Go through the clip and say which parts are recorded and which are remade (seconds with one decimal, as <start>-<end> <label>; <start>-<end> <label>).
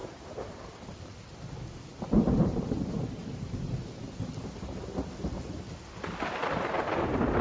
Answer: 0.0-7.4 recorded